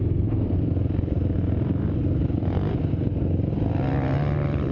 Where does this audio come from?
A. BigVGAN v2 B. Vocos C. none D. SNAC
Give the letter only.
C